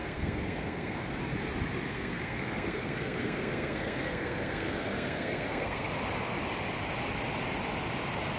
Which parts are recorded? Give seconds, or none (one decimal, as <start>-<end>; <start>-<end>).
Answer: 1.2-1.9; 5.9-8.4